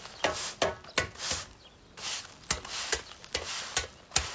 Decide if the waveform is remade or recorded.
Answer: recorded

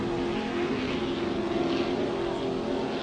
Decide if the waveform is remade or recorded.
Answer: recorded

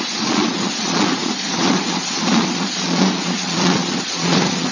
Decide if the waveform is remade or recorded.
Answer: remade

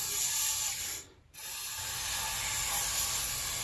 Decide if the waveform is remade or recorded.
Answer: recorded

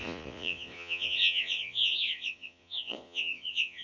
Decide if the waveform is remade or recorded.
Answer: remade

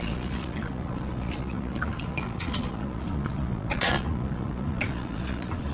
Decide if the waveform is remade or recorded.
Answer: remade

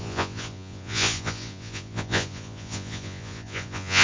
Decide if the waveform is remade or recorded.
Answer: remade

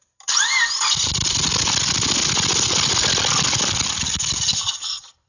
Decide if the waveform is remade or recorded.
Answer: recorded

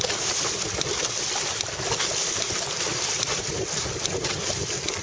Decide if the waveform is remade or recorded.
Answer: recorded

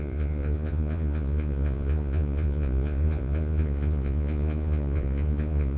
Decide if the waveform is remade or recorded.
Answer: remade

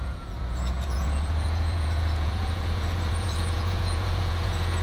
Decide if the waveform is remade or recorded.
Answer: remade